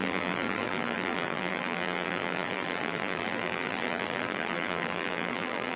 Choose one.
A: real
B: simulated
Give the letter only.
B